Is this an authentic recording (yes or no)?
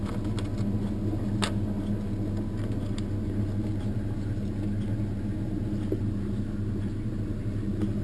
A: yes